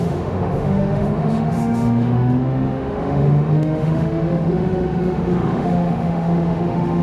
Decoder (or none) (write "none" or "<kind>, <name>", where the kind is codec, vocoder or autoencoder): autoencoder, DAC-VAE